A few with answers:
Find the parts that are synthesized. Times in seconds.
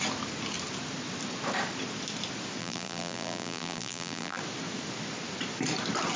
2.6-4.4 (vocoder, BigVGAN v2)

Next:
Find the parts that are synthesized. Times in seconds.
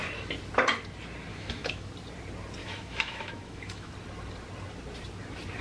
1.3-1.9 (autoencoder, DAC-VAE); 2.6-3.9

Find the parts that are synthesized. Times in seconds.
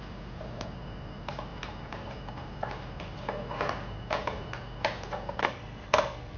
5.4-6.4 (codec, SNAC)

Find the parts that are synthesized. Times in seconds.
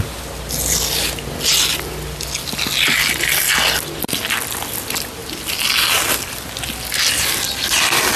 none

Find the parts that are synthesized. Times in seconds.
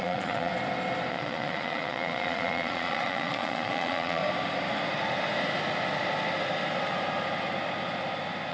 0.0-0.5 (vocoder, Vocos); 1.1-4.2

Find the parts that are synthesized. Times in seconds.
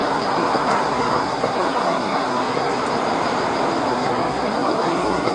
0.0-2.8 (codec, SNAC); 3.9-5.3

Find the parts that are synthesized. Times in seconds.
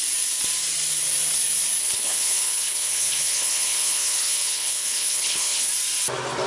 1.8-5.7 (codec, HILCodec)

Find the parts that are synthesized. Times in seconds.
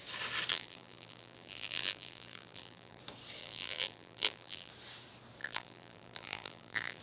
0.5-3.0 (vocoder, BigVGAN v2); 3.4-4.7; 5.4-7.0